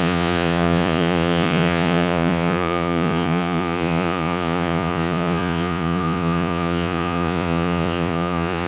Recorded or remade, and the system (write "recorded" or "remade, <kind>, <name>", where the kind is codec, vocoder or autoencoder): remade, vocoder, Vocos